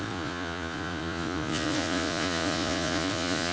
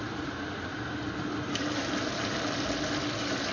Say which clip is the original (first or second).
second